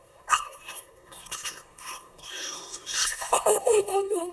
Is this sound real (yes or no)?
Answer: no